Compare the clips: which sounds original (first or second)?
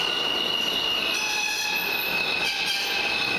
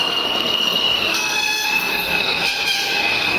first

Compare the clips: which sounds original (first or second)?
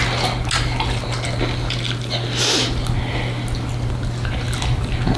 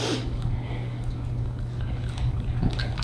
first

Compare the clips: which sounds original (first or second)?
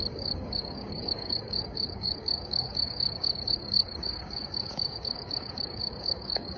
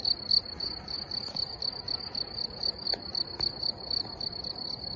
second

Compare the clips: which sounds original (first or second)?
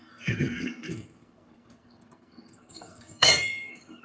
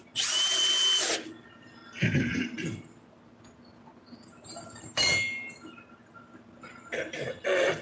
second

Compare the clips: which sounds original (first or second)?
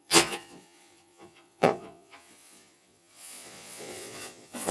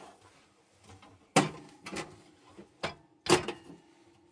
second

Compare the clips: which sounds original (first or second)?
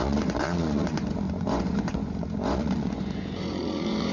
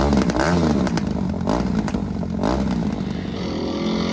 second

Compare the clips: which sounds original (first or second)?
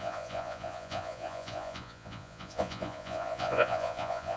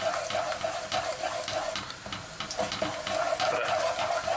second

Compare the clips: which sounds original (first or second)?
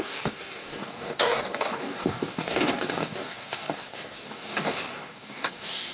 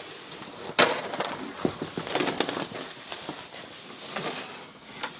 second